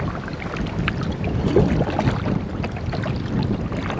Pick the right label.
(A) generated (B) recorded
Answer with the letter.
B